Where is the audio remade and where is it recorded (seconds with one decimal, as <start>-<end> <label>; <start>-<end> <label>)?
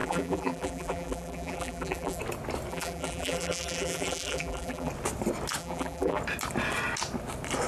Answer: 0.0-2.2 remade; 2.2-2.7 recorded; 2.7-4.9 remade; 4.9-5.6 recorded; 5.6-6.2 remade; 6.2-7.7 recorded